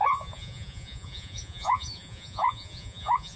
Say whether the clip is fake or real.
fake